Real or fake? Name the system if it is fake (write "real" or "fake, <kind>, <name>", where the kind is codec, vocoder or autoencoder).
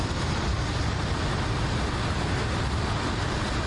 real